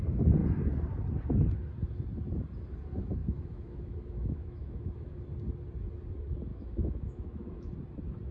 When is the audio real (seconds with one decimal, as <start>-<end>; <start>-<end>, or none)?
0.0-3.2; 5.2-6.5; 7.7-8.3